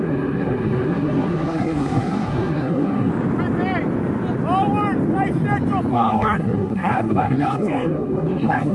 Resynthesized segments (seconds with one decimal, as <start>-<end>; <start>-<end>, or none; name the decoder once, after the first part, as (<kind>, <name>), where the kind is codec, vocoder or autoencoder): 0.0-3.1 (codec, SNAC); 5.9-8.7